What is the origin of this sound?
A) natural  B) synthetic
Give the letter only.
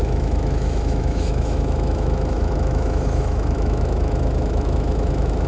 B